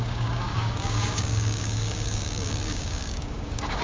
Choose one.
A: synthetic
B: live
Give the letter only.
A